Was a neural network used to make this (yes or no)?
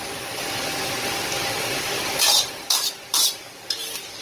yes